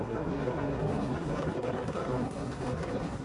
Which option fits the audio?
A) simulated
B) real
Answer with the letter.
A